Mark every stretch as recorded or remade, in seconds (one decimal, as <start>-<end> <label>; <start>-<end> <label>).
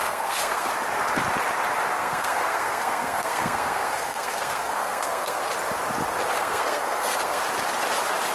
0.0-0.7 remade; 0.7-2.0 recorded; 2.0-5.4 remade; 5.4-6.4 recorded; 6.4-7.4 remade; 7.4-8.3 recorded